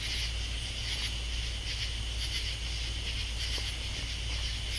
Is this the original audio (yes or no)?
yes